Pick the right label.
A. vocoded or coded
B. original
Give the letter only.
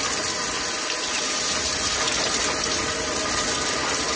B